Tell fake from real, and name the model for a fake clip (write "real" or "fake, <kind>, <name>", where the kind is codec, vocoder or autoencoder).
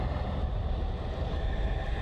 fake, vocoder, BigVGAN v2